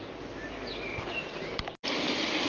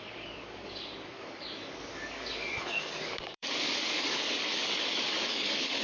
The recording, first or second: first